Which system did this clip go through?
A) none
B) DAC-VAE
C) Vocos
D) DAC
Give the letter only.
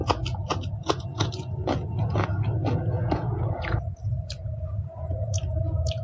C